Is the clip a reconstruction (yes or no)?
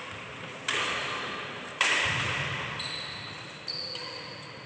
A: no